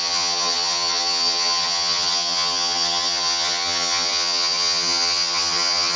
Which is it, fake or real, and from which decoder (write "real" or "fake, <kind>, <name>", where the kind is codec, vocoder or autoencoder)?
fake, vocoder, HiFi-GAN